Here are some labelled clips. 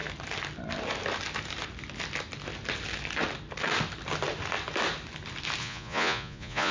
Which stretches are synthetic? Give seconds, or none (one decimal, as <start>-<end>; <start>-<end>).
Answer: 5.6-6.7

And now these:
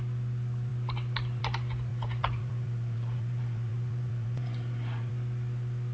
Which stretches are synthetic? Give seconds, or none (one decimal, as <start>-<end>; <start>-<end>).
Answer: 1.9-5.1

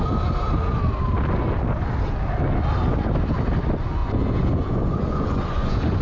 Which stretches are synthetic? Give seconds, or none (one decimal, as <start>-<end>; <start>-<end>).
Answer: 4.0-6.0